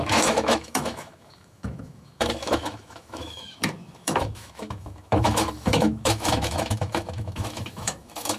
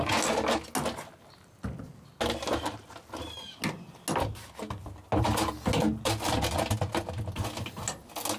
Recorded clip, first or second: second